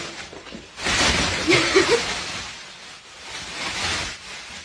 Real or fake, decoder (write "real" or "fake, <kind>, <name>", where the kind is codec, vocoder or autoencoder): real